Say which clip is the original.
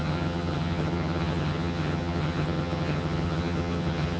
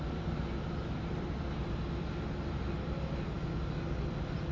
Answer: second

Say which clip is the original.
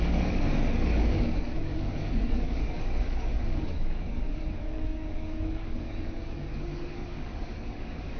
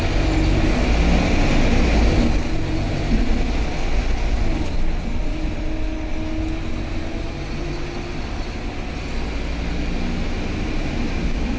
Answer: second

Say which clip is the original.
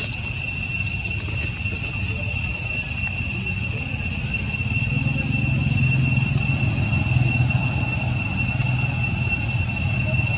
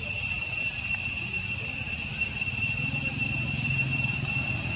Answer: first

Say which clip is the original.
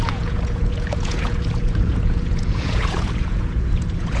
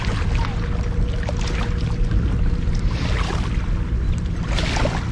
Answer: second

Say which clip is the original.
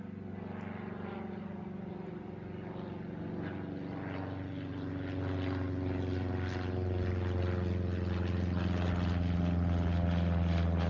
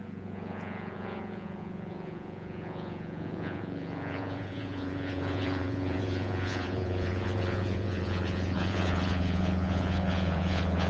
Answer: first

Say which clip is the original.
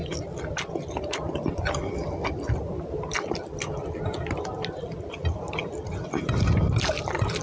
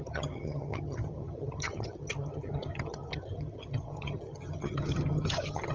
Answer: first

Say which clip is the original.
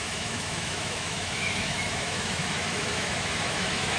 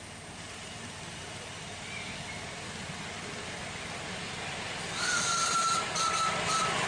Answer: second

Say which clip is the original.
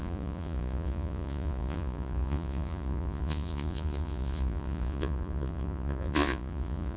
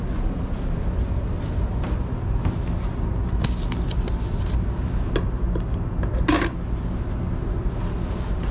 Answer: second